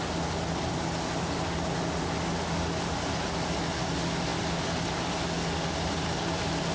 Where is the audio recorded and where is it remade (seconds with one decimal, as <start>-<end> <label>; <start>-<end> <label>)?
0.0-6.7 recorded